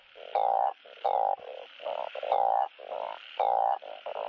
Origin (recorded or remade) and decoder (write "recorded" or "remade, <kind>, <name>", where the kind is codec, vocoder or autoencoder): recorded